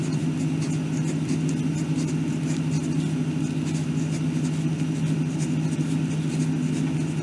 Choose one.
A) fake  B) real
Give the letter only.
B